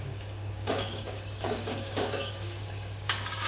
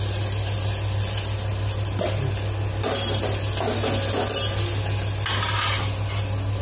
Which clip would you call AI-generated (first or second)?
first